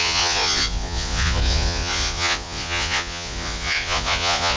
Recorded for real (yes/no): no